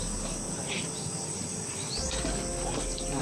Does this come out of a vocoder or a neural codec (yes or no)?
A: no